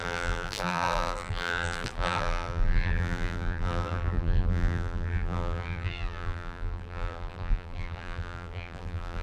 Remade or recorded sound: remade